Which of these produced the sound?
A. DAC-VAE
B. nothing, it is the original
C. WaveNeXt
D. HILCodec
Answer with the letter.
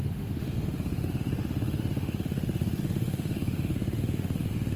A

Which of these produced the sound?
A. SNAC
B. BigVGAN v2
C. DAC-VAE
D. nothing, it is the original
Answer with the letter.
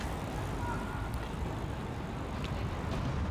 D